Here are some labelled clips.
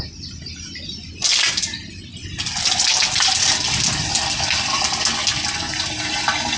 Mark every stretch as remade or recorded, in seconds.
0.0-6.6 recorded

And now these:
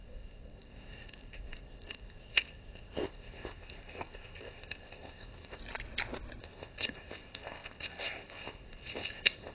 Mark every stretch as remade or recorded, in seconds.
0.0-5.6 remade; 5.6-6.4 recorded; 6.4-9.5 remade